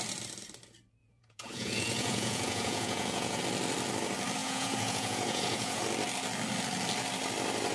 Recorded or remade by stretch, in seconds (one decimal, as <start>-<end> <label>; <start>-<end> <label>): 0.0-1.0 recorded; 1.0-3.4 remade; 3.4-4.4 recorded; 4.4-5.8 remade; 5.8-7.7 recorded